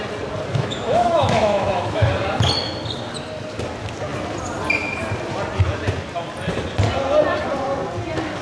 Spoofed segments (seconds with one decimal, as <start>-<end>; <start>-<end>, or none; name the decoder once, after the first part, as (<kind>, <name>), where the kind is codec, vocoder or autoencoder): 0.5-2.1 (autoencoder, DAC-VAE)